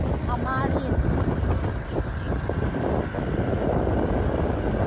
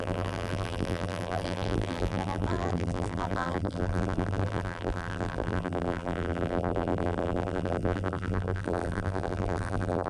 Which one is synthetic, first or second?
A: second